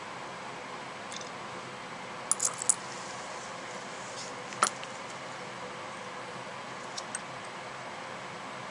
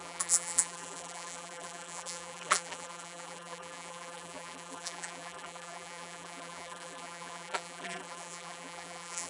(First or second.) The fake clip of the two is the second